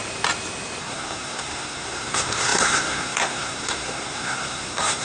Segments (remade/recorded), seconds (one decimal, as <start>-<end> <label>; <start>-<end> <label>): 0.0-0.8 recorded; 0.8-5.0 remade